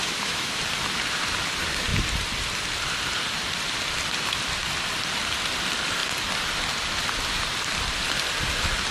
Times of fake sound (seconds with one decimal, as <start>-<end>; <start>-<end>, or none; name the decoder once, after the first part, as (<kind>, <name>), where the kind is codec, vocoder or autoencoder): 0.0-0.6 (autoencoder, DAC-VAE)